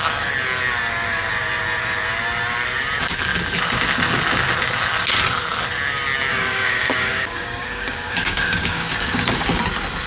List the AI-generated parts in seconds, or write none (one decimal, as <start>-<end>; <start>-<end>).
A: 6.3-9.6